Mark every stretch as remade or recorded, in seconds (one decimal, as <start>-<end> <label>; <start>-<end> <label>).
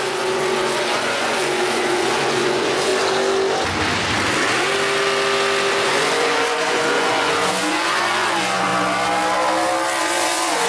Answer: 0.0-2.9 remade; 2.9-5.8 recorded; 5.8-8.7 remade; 8.7-10.0 recorded; 10.0-10.7 remade